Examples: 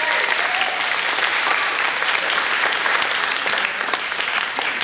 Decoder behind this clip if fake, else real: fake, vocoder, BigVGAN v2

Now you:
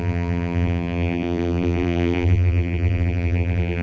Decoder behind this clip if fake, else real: fake, vocoder, BigVGAN v2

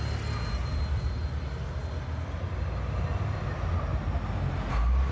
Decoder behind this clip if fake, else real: real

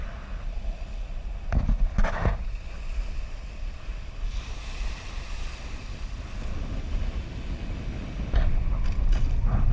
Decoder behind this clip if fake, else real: real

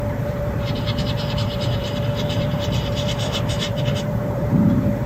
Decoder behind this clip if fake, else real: fake, vocoder, BigVGAN v2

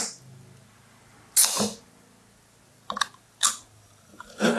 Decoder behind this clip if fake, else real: real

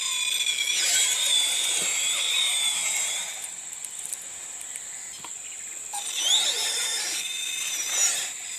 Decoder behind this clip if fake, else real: real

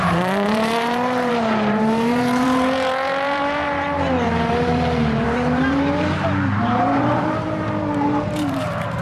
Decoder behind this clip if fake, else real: fake, vocoder, BigVGAN v2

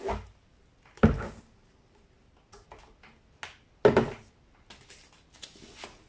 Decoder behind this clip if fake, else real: real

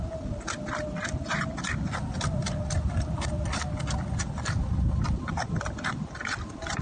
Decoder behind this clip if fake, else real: real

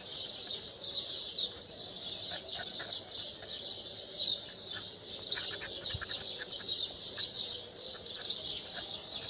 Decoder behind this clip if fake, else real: real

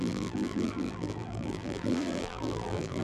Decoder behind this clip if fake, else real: fake, vocoder, BigVGAN v2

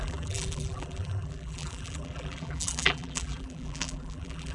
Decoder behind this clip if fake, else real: fake, vocoder, BigVGAN v2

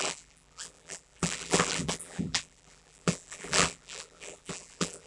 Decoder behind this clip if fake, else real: fake, vocoder, BigVGAN v2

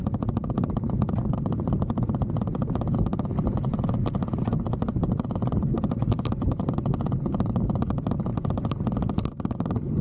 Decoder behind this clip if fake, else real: fake, vocoder, BigVGAN v2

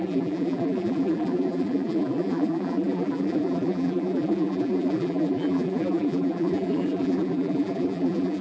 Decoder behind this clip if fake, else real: fake, vocoder, BigVGAN v2